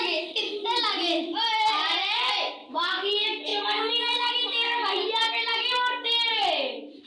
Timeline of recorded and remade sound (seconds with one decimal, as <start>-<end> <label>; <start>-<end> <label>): 0.0-2.6 recorded; 2.6-3.1 remade; 3.1-7.1 recorded